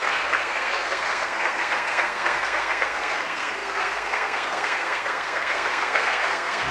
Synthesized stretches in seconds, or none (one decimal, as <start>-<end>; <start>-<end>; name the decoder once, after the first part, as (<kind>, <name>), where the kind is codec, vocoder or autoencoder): 0.0-6.7 (codec, SNAC)

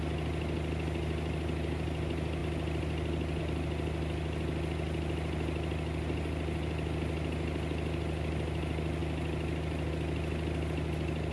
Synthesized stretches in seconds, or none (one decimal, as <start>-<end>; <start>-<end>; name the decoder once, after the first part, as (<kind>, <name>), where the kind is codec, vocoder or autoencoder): none

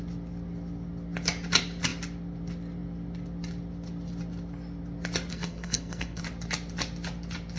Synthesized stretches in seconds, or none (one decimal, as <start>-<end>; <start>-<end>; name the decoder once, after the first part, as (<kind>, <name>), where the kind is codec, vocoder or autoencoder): 5.3-6.2 (codec, SNAC)

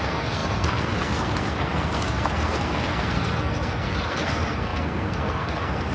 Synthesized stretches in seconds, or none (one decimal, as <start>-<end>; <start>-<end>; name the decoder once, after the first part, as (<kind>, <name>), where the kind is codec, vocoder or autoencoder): 0.0-5.9 (codec, SNAC)

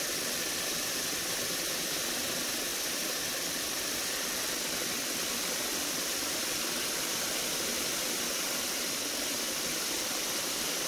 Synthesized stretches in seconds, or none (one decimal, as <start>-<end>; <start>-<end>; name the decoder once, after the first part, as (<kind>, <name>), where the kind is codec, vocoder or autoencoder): none

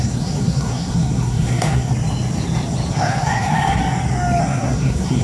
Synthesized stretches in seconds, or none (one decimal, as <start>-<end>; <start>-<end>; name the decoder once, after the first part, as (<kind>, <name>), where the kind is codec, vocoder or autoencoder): 0.0-1.9 (codec, SNAC); 2.9-3.8; 4.4-5.2

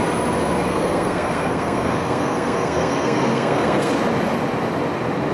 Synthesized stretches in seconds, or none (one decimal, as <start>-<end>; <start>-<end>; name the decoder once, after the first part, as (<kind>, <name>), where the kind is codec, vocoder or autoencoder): 0.7-3.9 (codec, SNAC)

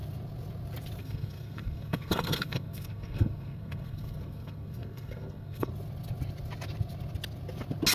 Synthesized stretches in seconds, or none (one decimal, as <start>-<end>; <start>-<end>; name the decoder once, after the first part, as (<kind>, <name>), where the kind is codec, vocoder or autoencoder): 1.0-5.7 (codec, SNAC)